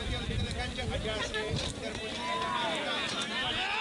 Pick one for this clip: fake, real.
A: real